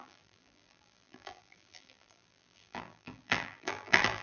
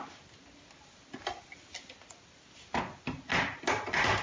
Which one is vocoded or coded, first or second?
first